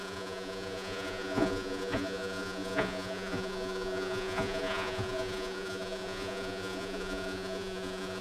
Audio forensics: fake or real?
fake